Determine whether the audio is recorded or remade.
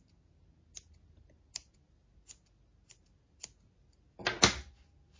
recorded